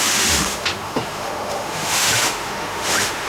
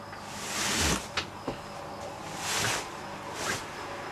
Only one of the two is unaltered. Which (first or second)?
second